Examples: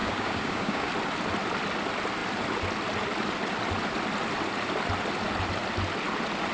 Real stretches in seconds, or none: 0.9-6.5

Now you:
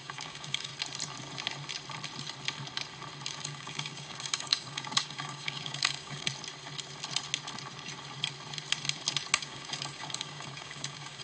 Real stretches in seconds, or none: 0.7-3.3; 6.3-9.4

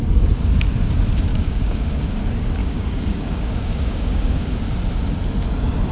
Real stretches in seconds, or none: 0.0-1.3; 2.2-2.6; 4.6-5.9